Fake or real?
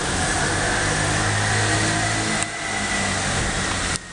real